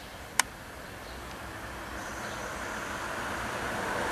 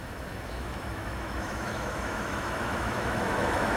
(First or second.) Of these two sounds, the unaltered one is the first